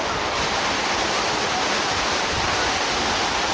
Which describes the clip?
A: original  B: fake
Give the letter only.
A